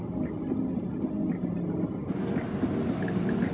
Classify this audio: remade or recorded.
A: recorded